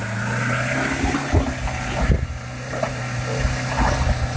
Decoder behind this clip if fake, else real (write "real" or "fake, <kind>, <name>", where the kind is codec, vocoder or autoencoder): real